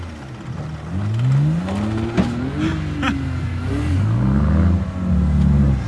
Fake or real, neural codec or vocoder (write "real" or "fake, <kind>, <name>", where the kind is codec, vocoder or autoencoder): real